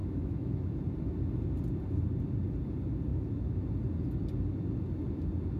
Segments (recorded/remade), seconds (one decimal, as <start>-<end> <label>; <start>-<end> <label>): 0.0-0.8 remade; 0.8-3.1 recorded; 3.1-3.7 remade; 3.7-5.6 recorded